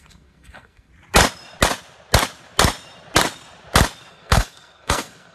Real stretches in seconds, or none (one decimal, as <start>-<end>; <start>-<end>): 0.9-4.1